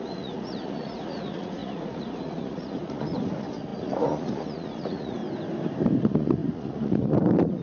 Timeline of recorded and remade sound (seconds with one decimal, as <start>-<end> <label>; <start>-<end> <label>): 0.0-5.2 remade; 5.2-6.0 recorded; 6.0-7.6 remade